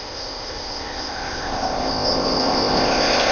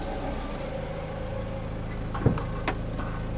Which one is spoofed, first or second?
first